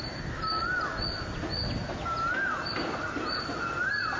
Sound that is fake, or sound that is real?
real